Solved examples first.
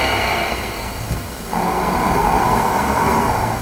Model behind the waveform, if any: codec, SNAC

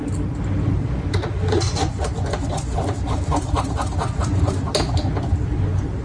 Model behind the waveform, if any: none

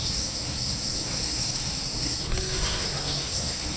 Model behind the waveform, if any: codec, SNAC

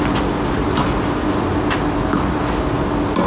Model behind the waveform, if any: none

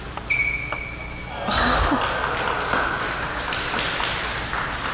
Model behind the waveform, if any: none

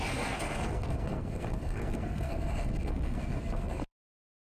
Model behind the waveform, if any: codec, SNAC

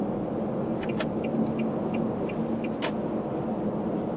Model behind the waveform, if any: none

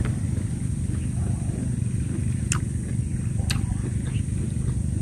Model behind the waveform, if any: none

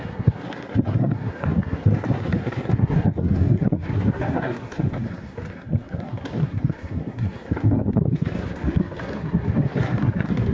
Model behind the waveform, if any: codec, SNAC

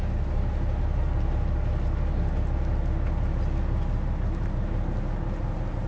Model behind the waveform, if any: none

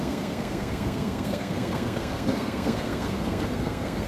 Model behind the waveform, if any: codec, SNAC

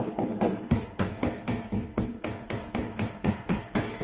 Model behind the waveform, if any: codec, SNAC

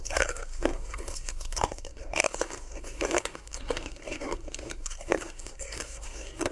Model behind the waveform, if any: codec, SNAC